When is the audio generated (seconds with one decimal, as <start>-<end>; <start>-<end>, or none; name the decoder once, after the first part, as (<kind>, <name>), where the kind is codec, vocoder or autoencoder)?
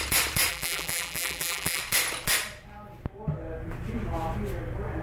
0.5-1.8 (vocoder, BigVGAN v2)